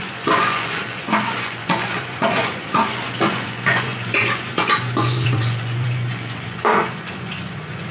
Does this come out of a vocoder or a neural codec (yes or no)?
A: yes